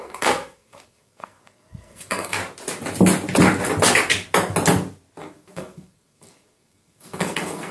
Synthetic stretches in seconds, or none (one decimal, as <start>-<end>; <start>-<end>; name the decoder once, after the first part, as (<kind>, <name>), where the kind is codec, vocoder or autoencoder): 0.0-2.4 (codec, SNAC); 5.2-7.7